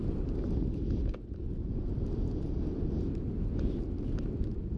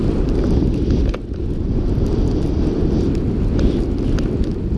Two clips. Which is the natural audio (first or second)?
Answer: first